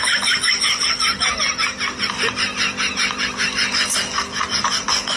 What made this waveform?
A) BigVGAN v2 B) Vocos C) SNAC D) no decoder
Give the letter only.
D